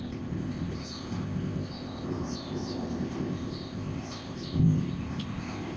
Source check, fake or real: fake